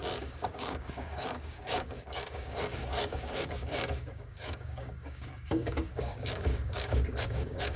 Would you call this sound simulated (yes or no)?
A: yes